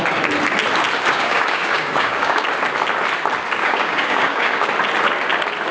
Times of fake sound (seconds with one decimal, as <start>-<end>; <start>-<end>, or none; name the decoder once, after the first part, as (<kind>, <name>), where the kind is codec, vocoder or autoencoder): 1.1-2.5 (codec, DAC); 3.6-4.7